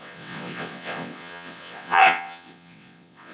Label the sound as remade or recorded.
remade